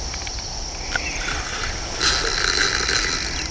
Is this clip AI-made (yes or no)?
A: no